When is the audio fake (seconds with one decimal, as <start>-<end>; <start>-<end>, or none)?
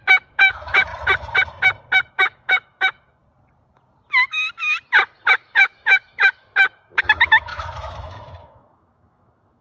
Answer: 0.0-0.9; 2.1-3.2; 5.3-9.6